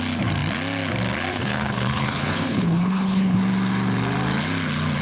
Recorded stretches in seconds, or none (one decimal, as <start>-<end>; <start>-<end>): 0.0-1.3; 3.4-5.0